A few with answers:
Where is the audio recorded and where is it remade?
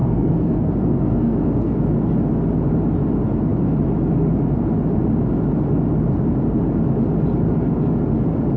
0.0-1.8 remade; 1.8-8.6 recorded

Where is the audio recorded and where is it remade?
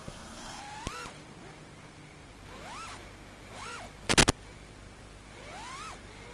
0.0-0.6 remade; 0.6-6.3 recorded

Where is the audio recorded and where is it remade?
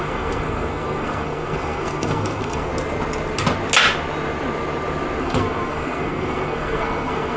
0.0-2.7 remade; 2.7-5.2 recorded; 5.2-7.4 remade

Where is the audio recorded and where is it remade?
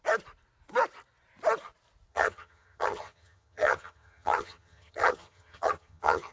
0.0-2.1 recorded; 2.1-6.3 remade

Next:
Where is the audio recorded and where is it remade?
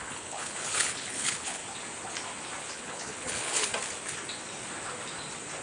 0.0-1.6 remade; 1.6-2.7 recorded; 2.7-3.7 remade; 3.7-5.6 recorded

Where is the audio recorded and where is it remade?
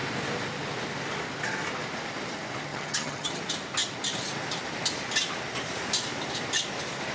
0.0-2.7 recorded; 2.7-3.4 remade; 3.4-7.1 recorded